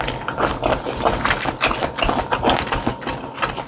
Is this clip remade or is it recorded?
recorded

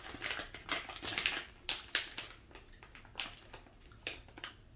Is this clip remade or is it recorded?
recorded